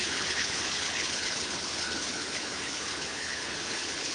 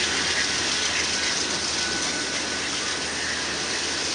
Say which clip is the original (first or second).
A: second